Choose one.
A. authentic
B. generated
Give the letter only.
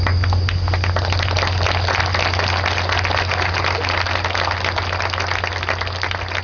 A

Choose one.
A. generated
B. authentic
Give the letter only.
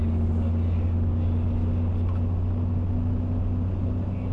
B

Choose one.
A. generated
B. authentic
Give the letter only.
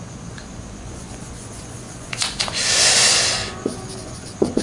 A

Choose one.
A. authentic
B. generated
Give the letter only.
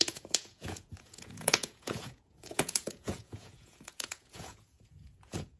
B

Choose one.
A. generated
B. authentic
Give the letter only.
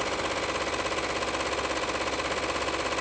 B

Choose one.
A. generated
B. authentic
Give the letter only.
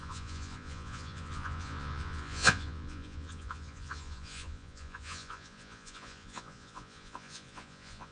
A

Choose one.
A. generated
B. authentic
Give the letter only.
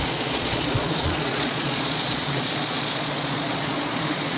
A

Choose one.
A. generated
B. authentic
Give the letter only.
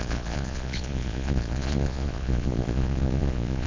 A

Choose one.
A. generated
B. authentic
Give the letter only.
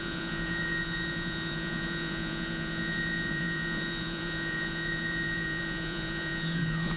A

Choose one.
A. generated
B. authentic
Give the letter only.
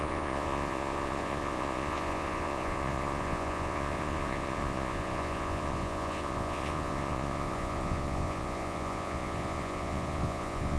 A